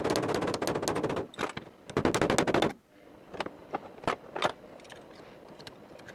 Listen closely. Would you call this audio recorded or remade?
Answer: recorded